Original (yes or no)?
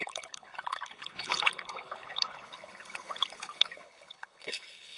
no